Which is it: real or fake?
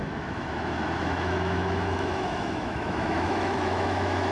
fake